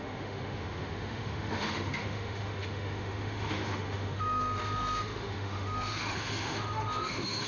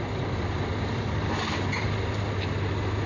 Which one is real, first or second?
second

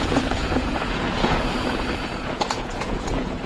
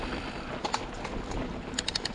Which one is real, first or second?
second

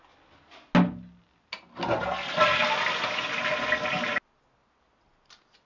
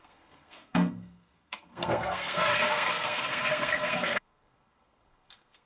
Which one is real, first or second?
first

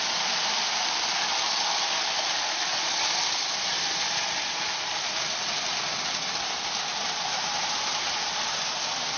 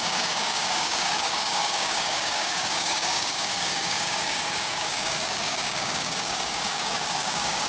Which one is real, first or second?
first